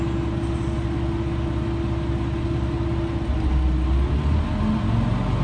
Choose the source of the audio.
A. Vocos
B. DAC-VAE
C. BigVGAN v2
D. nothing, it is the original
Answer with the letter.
D